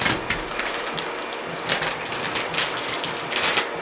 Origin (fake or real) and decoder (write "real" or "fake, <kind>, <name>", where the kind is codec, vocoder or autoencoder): real